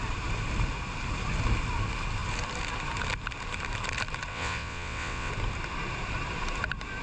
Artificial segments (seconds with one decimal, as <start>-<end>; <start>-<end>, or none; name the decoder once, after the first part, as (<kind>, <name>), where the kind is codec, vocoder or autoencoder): 4.3-5.3 (vocoder, WaveNeXt)